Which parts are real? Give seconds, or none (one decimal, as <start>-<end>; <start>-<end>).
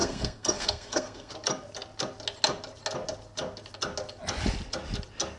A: 1.3-5.4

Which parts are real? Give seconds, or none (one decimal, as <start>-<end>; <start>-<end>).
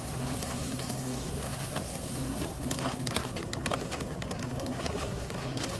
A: none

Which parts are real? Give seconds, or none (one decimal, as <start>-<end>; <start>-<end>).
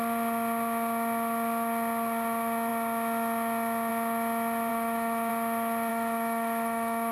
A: 0.0-4.7; 5.3-5.9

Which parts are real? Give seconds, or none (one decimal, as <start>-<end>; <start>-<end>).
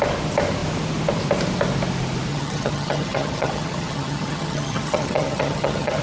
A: 0.0-2.3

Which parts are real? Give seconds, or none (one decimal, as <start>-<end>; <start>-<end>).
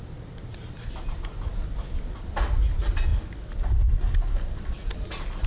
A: 0.0-3.1; 3.8-5.5